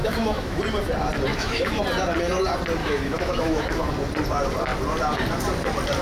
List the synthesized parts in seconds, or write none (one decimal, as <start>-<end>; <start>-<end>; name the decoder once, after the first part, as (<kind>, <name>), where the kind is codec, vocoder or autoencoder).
0.0-0.6 (autoencoder, DAC-VAE); 1.3-1.8; 2.8-3.9